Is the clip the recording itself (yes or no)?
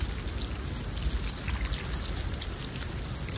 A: yes